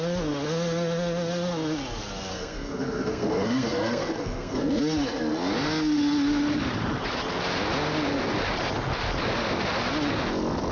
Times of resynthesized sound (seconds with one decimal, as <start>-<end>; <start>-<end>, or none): 2.3-4.8

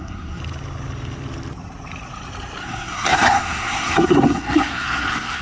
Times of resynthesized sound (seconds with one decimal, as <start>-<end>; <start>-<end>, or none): 0.0-0.4; 2.6-5.4